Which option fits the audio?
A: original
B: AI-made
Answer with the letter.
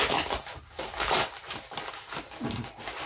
A